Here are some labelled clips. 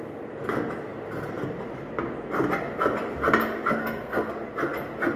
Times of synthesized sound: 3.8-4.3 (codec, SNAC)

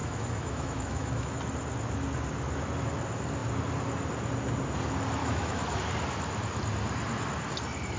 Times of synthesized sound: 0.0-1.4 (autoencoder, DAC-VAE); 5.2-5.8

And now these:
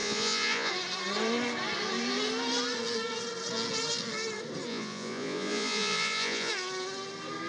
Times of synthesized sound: 0.0-0.7 (vocoder, Vocos); 4.7-6.5

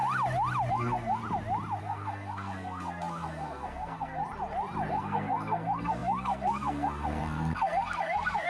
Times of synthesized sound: 0.7-1.2 (codec, SNAC); 1.8-4.2; 4.9-8.5